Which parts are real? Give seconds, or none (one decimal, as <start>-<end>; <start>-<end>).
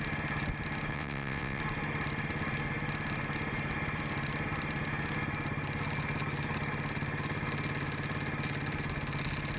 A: 0.0-0.9; 1.6-9.6